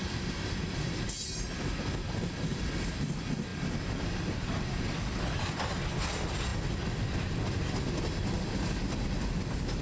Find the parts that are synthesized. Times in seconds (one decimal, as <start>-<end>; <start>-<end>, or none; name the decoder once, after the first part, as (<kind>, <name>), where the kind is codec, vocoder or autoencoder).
none